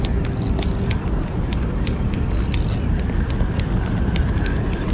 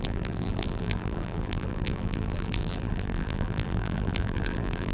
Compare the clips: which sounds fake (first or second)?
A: second